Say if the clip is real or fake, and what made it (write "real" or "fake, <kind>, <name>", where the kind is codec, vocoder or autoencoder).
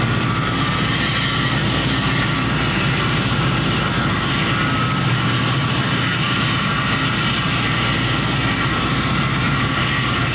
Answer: real